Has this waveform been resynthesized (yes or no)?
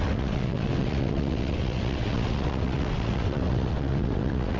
yes